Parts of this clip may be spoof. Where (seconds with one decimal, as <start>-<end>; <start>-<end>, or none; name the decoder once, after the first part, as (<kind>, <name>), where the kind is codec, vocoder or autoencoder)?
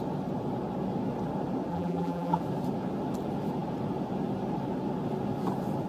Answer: 1.7-2.4 (vocoder, BigVGAN v2)